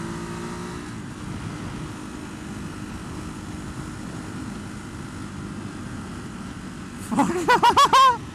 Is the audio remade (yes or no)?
no